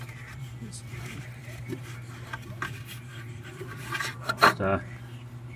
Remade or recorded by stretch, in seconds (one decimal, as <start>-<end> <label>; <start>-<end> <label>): 0.0-0.8 recorded; 0.8-1.6 remade; 1.6-3.1 recorded; 3.1-4.6 remade; 4.6-5.6 recorded